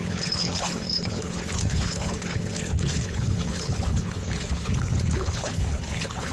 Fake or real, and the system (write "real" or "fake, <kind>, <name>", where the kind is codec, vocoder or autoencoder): fake, codec, HILCodec